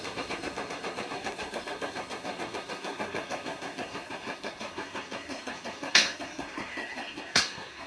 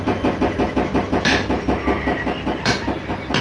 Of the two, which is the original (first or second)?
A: second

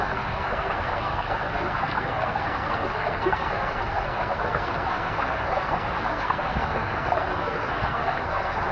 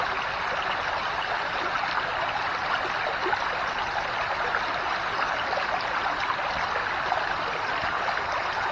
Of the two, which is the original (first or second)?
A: second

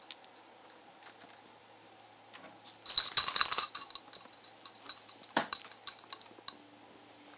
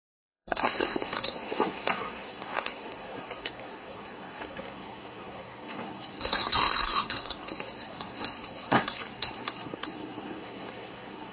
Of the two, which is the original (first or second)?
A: first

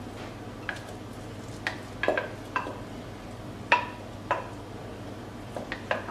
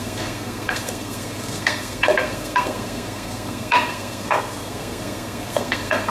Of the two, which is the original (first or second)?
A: first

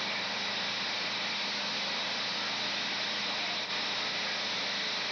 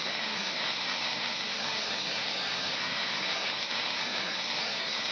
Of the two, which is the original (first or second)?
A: first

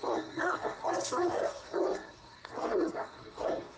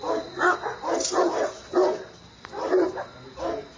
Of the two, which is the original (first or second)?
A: second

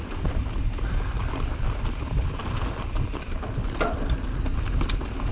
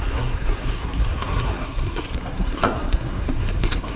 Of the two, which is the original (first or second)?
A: first